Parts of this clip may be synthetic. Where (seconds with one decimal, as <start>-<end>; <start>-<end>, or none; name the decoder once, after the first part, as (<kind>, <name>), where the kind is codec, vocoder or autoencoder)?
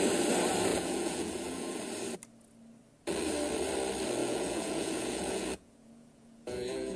0.7-1.8 (vocoder, Vocos); 4.2-7.0